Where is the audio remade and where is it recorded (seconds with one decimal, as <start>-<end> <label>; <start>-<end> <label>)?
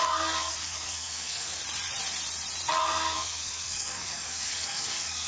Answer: 0.0-1.6 remade; 1.6-2.8 recorded; 2.8-5.3 remade